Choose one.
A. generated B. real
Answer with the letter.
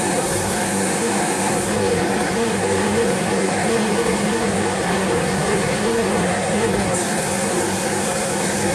A